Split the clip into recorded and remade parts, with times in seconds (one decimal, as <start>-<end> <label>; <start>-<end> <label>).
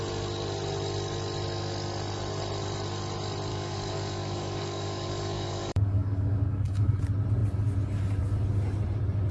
0.0-3.5 recorded; 3.5-7.0 remade; 7.0-9.3 recorded